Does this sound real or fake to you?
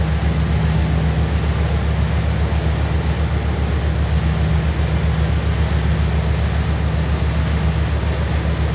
real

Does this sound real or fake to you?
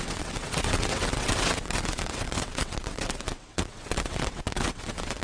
fake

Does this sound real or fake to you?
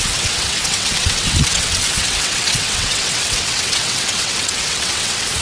fake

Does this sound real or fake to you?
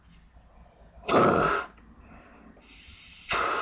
real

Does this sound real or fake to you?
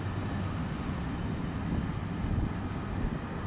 real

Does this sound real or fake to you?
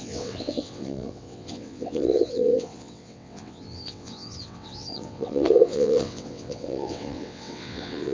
fake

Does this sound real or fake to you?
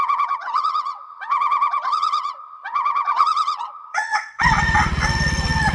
fake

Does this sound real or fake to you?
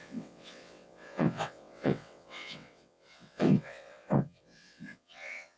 fake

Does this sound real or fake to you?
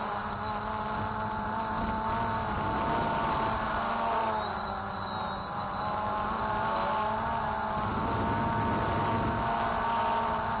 real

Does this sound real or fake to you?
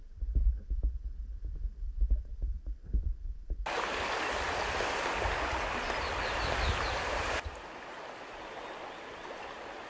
real